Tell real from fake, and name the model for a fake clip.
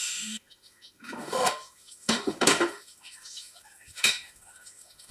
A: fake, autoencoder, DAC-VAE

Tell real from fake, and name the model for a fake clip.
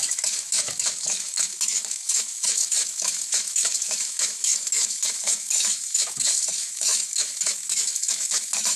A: fake, autoencoder, DAC-VAE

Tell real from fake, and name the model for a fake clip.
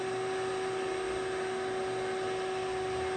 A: real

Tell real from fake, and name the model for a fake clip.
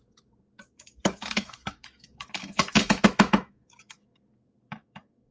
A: fake, autoencoder, DAC-VAE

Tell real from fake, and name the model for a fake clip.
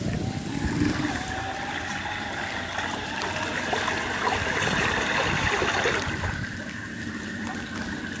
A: real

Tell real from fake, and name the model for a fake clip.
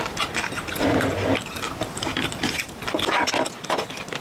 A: real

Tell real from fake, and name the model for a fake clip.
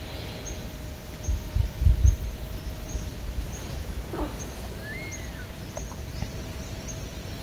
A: real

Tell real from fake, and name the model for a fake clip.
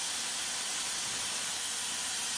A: real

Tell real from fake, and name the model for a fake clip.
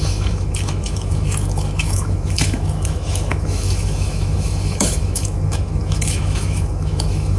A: fake, autoencoder, DAC-VAE